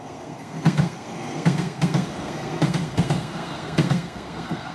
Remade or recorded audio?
remade